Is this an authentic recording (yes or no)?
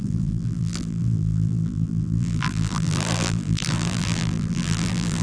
no